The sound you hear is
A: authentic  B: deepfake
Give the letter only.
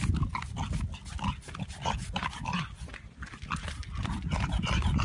A